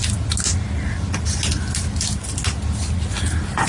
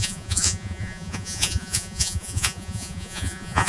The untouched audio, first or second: first